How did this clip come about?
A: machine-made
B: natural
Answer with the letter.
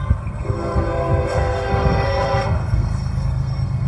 A